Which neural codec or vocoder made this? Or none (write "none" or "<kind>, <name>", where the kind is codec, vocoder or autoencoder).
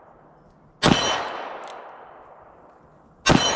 none